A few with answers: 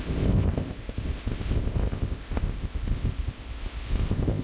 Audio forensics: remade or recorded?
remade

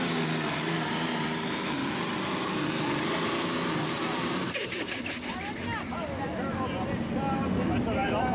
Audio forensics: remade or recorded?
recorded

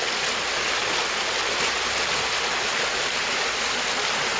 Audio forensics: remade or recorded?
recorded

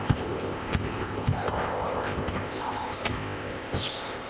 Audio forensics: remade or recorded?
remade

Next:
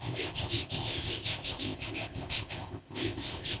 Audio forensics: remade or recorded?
remade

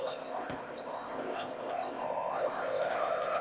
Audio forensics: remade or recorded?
remade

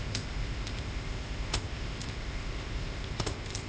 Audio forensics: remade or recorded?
remade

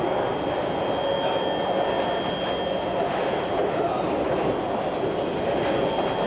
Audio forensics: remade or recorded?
recorded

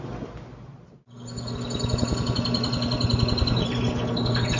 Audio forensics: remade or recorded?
recorded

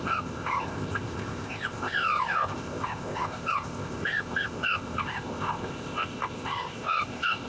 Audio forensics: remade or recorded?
remade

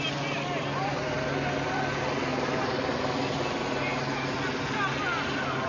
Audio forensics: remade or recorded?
recorded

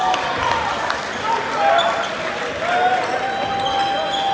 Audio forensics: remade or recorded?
recorded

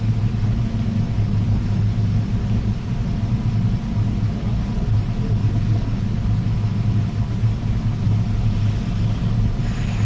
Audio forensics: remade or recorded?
recorded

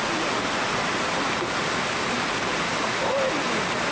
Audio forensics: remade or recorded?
recorded